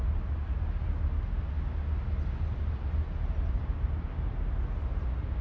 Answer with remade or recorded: recorded